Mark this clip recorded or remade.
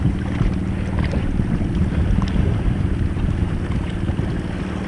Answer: recorded